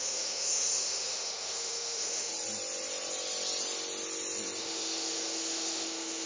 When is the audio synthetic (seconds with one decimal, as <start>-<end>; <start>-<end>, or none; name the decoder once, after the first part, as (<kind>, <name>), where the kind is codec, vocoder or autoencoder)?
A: 0.0-2.3 (autoencoder, DAC-VAE); 4.6-6.3